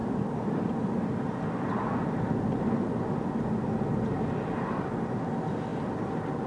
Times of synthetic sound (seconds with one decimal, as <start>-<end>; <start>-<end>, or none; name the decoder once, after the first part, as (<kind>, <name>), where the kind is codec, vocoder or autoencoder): none